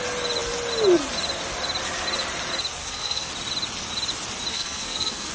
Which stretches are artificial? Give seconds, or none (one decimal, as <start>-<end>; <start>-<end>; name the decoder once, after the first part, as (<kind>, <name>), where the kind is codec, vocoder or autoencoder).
2.8-3.3 (codec, SNAC); 4.5-5.3